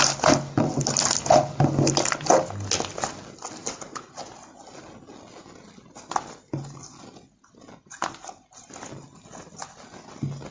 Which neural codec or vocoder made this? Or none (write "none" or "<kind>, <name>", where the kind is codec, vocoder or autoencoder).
none